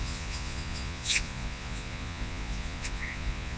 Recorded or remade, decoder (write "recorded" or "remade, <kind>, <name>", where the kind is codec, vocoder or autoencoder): remade, vocoder, Vocos